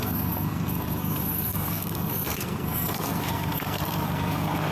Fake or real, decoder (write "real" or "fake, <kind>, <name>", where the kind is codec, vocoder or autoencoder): fake, codec, SNAC